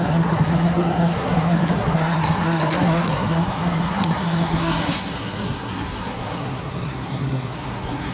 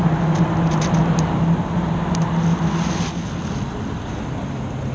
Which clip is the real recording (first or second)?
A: second